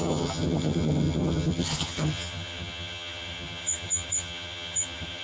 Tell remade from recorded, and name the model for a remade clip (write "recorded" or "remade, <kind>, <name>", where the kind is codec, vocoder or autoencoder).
remade, vocoder, HiFi-GAN